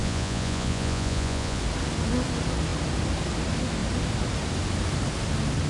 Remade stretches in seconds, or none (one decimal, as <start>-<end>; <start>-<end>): 0.0-1.6